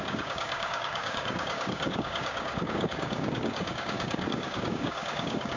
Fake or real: fake